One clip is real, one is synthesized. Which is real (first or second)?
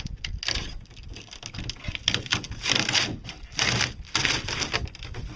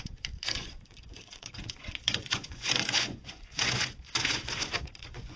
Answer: first